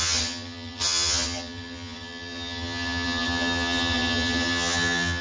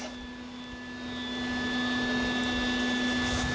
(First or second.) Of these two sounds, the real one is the second